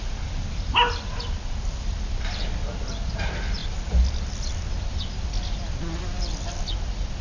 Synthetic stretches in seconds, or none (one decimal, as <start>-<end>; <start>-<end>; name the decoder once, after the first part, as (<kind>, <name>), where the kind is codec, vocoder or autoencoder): none